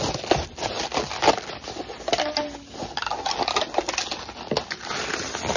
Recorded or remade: recorded